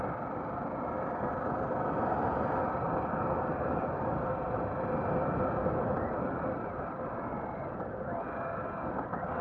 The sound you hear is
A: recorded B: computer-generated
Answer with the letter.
A